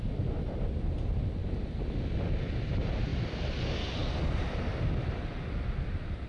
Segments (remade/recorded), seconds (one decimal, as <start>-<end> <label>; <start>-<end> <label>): 0.0-1.4 remade; 1.4-2.4 recorded; 2.4-3.1 remade; 3.1-3.6 recorded; 3.6-4.0 remade; 4.0-5.0 recorded; 5.0-6.3 remade